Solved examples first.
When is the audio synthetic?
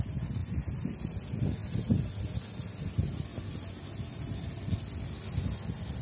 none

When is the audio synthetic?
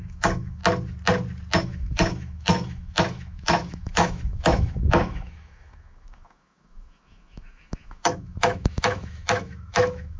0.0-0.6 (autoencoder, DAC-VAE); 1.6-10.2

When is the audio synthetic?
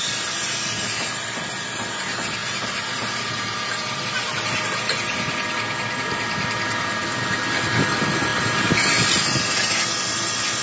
none